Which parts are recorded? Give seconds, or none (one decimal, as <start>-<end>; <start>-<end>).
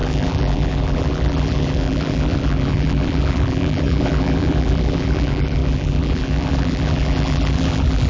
none